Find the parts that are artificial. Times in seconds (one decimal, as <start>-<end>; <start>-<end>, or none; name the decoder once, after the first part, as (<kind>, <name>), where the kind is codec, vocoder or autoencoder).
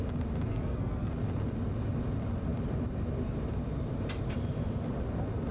0.5-1.1 (codec, SNAC)